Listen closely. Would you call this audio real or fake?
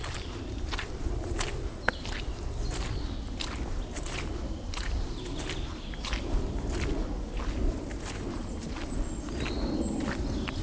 real